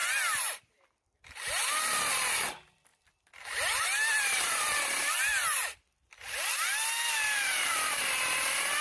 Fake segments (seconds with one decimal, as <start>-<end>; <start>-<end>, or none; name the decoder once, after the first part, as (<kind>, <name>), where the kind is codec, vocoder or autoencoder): none